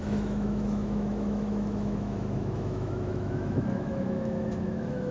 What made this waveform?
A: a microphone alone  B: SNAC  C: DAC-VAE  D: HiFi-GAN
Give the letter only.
C